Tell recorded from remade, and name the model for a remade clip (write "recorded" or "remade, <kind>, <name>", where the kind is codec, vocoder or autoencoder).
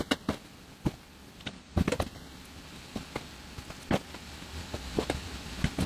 recorded